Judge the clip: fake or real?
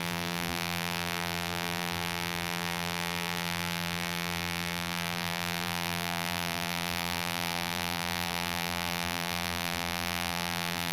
fake